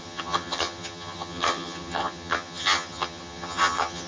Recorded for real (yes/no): no